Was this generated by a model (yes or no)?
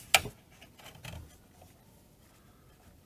no